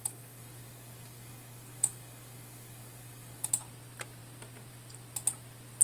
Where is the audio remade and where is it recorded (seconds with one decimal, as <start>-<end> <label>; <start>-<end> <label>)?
0.0-3.5 remade; 3.5-5.8 recorded